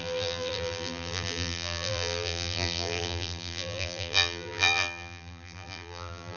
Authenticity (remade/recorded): remade